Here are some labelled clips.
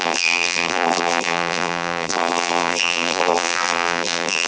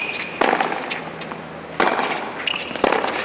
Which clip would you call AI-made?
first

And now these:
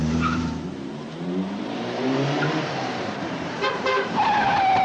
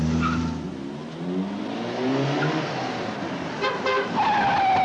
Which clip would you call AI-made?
first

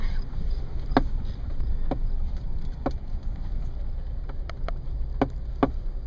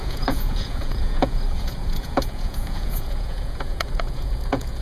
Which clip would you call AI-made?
second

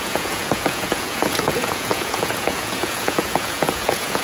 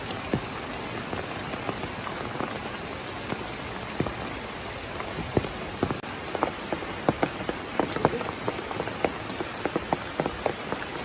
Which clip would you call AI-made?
first